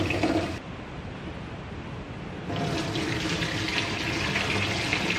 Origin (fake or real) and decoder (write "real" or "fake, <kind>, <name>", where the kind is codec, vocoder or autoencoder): real